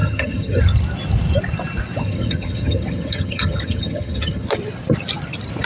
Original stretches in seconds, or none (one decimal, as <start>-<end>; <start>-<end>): 0.6-2.0; 4.5-5.7